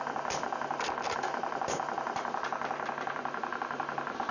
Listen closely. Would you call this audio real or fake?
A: real